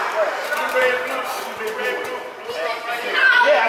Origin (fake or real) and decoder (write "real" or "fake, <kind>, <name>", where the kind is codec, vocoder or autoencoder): fake, vocoder, BigVGAN v2